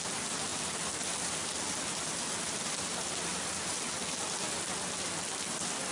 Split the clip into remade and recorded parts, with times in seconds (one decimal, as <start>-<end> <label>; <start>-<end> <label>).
0.0-5.9 recorded